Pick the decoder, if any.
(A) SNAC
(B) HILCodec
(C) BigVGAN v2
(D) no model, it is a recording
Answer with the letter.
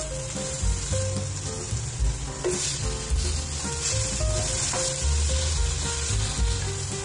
D